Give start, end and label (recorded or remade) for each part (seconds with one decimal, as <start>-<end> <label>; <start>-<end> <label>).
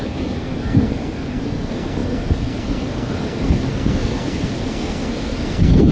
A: 0.0-5.9 remade